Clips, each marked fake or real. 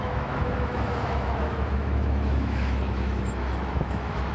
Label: fake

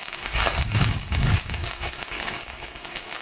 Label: fake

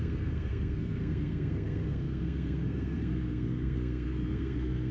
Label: fake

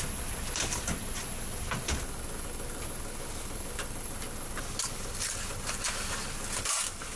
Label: real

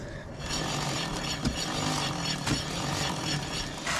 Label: real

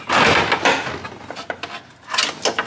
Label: real